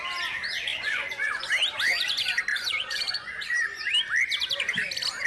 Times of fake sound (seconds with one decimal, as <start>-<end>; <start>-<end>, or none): 0.7-1.5; 2.5-3.9